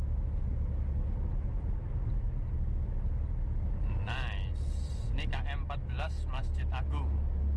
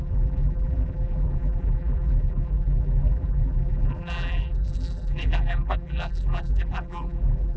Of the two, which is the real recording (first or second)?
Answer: first